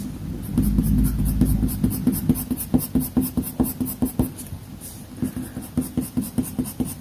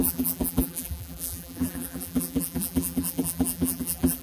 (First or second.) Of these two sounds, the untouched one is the first